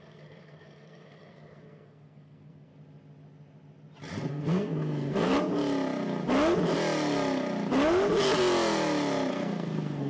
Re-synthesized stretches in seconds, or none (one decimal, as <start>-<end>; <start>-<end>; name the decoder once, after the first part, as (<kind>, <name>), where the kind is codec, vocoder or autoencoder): 0.0-2.7 (codec, SNAC); 4.3-5.3; 9.3-10.1

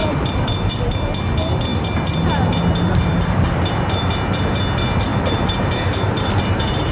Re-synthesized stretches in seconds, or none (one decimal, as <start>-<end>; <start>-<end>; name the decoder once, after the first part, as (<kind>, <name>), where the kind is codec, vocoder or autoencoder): 0.0-0.7 (vocoder, BigVGAN v2); 1.7-4.0; 5.1-6.4

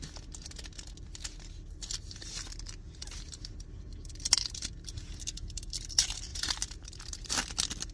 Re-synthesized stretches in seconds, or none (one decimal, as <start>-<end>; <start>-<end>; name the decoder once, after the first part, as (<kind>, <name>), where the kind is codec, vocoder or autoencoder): 6.3-7.3 (vocoder, BigVGAN v2)

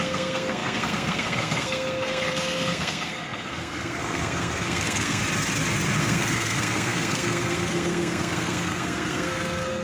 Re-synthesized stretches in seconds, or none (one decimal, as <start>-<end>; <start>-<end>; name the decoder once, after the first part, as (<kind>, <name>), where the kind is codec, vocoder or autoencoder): 0.0-5.2 (codec, SNAC); 6.0-9.8

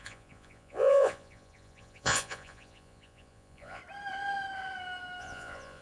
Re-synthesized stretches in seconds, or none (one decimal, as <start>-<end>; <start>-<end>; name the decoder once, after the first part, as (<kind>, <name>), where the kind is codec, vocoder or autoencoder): 0.0-3.8 (vocoder, Vocos); 5.2-5.8

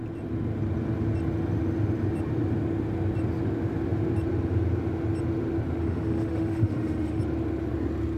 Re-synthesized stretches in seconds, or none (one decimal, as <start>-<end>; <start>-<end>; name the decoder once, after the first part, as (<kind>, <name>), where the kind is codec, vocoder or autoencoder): 5.8-7.2 (autoencoder, DAC-VAE)

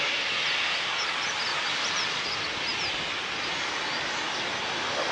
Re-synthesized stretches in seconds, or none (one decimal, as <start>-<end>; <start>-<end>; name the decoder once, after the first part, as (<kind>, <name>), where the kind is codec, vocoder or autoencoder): none

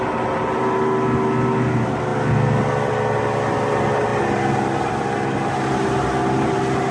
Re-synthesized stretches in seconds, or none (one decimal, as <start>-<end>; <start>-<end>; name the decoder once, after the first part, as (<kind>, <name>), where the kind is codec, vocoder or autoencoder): none